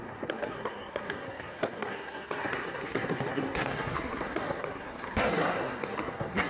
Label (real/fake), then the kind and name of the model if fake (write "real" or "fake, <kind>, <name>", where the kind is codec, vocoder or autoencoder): fake, codec, SNAC